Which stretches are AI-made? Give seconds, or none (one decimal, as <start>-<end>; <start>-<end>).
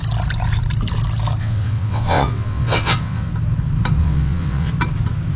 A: 1.4-3.3; 4.0-4.7